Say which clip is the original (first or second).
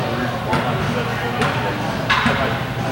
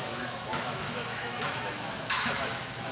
first